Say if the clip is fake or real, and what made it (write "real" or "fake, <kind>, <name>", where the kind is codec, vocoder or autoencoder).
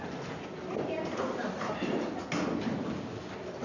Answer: real